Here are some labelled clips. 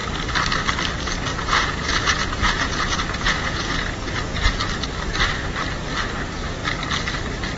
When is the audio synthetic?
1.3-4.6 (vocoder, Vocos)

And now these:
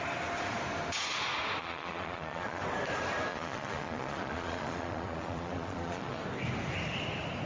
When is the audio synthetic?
1.6-2.6 (vocoder, Vocos); 3.3-6.2